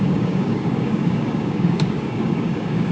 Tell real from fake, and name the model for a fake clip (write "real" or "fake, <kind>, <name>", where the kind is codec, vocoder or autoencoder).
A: fake, codec, DAC